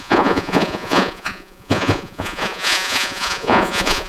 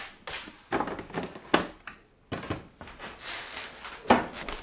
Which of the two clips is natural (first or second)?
second